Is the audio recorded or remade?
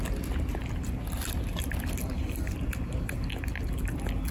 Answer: recorded